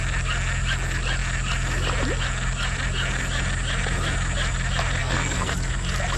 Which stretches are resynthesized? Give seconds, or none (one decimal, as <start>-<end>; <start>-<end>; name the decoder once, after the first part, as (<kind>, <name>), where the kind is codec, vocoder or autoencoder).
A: 5.0-5.5 (codec, SNAC)